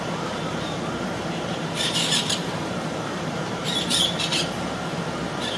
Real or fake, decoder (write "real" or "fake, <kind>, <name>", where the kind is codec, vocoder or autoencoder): fake, vocoder, BigVGAN v2